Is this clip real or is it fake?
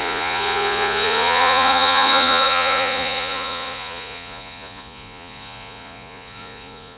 fake